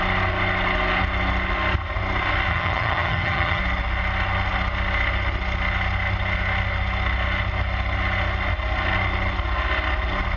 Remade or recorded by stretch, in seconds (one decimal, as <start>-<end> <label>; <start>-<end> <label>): 0.0-2.5 recorded; 2.5-3.6 remade; 3.6-10.4 recorded